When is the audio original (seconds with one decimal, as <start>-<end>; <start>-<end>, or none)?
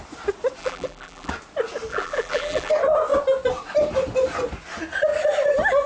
0.0-0.6; 1.3-1.9; 2.7-5.9